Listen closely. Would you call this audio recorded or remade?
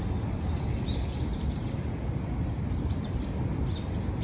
recorded